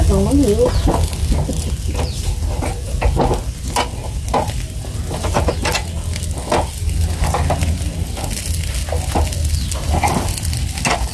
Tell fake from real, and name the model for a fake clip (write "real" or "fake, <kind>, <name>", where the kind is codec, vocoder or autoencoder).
real